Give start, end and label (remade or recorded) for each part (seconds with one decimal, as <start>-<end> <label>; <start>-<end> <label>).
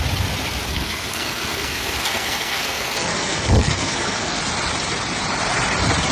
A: 0.0-0.7 recorded; 0.7-4.4 remade; 4.4-6.1 recorded